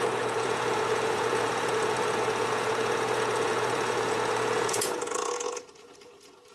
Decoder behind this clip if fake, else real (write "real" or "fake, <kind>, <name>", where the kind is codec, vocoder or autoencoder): fake, vocoder, Vocos